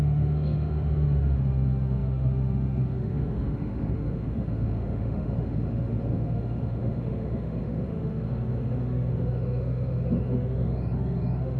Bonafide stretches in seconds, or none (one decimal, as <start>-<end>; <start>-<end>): none